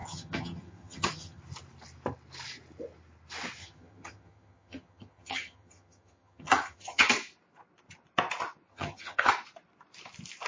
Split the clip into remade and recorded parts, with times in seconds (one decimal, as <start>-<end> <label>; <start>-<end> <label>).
0.0-1.4 remade; 1.4-3.6 recorded; 3.6-7.1 remade; 7.1-8.7 recorded; 8.7-9.3 remade; 9.3-10.5 recorded